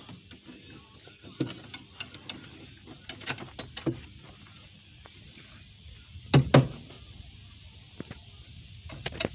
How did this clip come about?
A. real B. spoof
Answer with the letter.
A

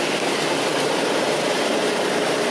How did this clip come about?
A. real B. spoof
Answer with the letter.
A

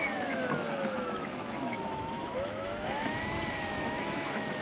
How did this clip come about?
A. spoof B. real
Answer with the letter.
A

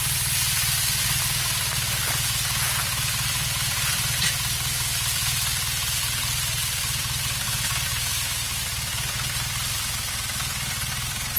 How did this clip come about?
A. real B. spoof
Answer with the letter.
A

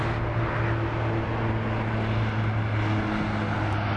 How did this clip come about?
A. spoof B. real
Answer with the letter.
B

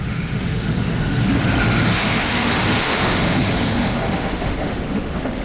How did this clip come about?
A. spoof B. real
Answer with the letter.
A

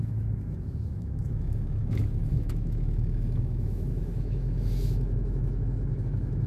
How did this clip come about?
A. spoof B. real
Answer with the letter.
A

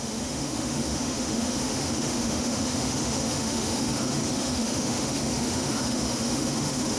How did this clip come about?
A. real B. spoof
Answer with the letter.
B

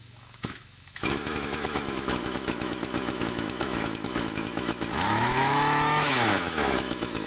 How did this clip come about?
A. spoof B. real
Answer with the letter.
A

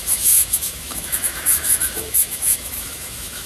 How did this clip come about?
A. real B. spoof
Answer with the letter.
B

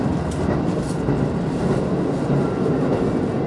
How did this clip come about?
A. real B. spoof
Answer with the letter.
A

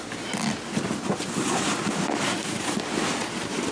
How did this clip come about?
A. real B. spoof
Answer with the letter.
A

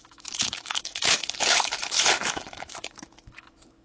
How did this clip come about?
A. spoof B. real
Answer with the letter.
A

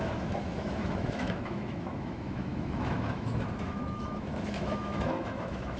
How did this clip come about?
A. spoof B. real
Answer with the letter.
A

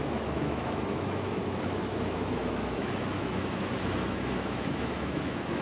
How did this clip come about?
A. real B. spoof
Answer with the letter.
B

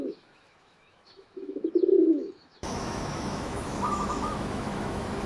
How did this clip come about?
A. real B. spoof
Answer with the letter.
B